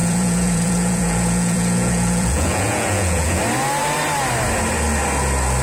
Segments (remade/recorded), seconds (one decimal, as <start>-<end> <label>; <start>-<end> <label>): 0.0-3.4 remade; 3.4-5.6 recorded